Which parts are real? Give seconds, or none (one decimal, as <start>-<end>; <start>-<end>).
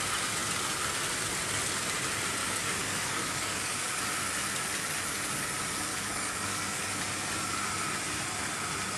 0.0-2.4; 4.0-5.9; 7.0-9.0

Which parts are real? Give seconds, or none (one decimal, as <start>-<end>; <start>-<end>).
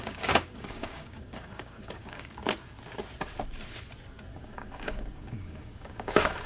2.4-4.3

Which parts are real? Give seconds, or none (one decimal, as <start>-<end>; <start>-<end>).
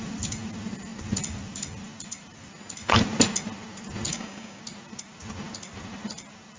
0.0-4.1; 4.6-6.6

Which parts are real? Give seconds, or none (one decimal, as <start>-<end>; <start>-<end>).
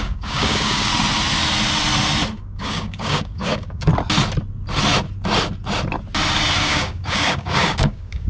0.9-2.4; 3.9-6.6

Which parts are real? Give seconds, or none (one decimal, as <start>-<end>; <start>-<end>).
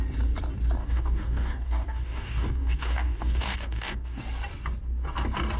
0.0-0.8; 4.2-5.6